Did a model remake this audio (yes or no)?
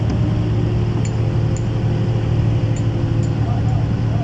no